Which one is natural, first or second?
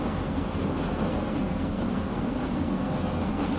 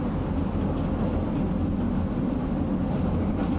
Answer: second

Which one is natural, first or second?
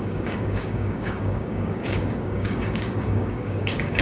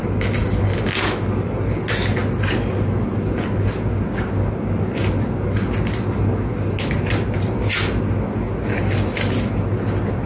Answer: second